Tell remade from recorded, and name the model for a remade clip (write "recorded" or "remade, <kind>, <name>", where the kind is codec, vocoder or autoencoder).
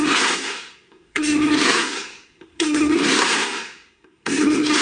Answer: remade, codec, SNAC